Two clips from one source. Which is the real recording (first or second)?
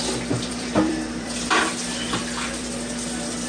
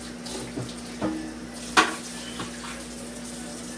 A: second